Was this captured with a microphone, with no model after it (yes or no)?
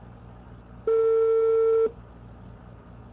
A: yes